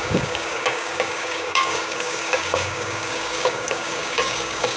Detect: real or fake fake